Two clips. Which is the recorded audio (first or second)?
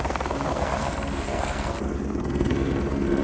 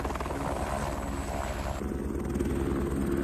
second